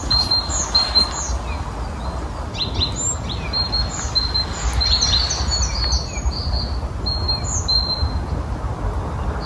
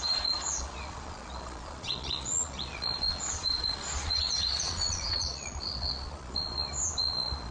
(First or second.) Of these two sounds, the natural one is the first